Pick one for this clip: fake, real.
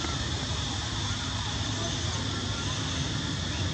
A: real